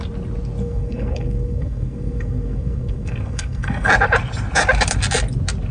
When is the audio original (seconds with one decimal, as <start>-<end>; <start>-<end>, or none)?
0.0-0.6; 3.9-5.7